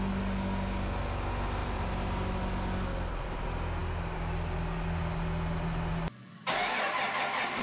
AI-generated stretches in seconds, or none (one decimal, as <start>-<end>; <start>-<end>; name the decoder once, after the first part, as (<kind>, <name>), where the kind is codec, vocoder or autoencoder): none